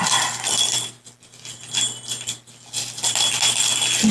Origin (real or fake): real